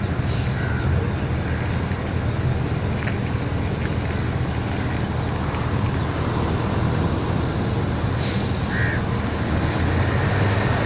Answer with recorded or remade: recorded